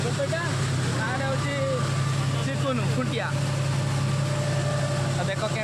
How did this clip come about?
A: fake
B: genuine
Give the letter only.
B